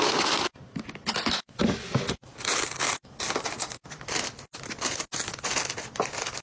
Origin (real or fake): real